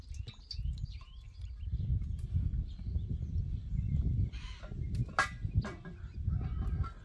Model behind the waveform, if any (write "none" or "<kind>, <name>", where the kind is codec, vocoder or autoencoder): none